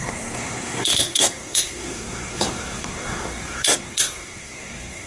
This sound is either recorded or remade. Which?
remade